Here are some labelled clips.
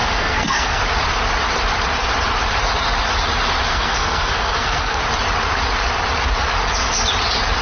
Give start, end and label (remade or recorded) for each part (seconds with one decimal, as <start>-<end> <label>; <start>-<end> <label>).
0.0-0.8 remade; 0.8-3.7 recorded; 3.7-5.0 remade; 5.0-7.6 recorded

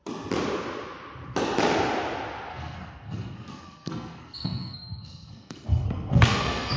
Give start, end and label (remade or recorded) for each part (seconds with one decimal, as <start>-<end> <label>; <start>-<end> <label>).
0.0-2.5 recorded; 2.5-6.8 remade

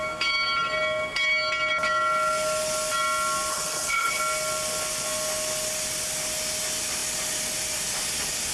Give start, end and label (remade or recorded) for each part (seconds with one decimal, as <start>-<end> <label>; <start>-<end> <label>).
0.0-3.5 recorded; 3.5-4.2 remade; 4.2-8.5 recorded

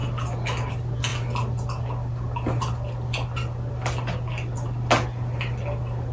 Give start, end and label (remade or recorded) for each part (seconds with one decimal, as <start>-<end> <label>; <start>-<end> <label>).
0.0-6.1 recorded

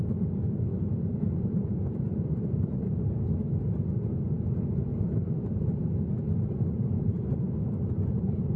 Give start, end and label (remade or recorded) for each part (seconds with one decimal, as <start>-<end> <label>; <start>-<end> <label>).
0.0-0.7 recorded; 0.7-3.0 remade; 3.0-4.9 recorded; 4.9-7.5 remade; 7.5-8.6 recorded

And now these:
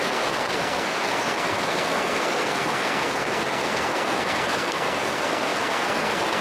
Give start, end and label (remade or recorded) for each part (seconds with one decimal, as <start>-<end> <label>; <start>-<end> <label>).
0.0-6.4 remade